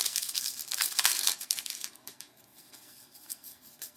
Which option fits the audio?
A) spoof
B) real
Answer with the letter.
A